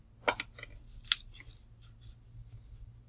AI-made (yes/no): no